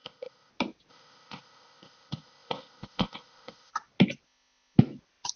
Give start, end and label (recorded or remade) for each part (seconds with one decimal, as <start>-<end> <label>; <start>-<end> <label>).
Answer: 0.0-0.5 remade; 0.5-0.9 recorded; 0.9-3.7 remade; 3.7-5.4 recorded